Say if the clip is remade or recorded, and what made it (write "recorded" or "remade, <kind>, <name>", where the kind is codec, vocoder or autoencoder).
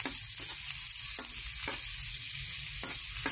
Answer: recorded